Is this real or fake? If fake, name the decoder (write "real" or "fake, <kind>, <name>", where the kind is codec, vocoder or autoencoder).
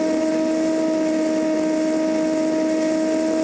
real